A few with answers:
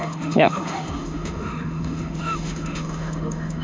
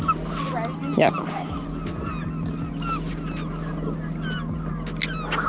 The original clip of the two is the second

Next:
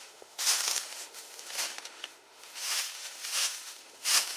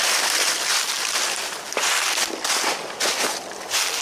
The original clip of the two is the second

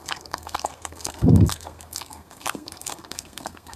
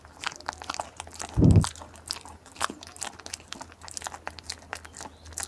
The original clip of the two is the second